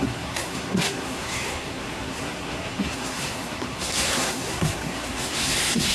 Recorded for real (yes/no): no